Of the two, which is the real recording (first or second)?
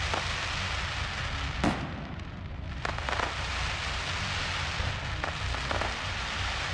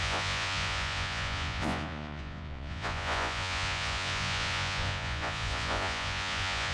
first